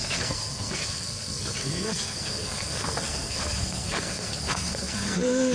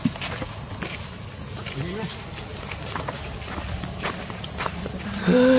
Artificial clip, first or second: first